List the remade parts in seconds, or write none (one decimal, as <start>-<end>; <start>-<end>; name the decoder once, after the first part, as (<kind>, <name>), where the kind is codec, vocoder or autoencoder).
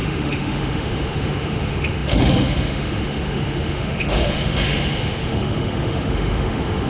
0.0-6.9 (autoencoder, DAC-VAE)